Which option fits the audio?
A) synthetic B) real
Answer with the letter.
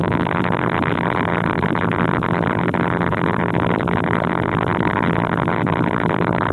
A